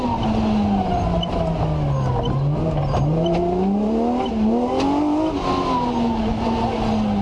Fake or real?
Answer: real